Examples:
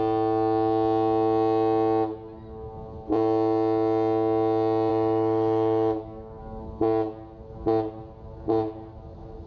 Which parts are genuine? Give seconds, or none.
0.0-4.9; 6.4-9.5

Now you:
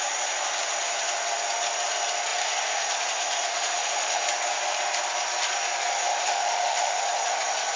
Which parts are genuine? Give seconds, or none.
0.0-3.5; 4.2-6.1; 7.0-7.8